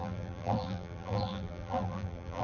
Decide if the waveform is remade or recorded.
remade